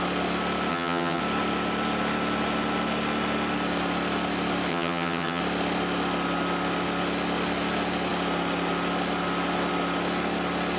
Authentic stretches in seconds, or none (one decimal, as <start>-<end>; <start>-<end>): 0.0-0.7; 1.2-4.7; 5.4-10.8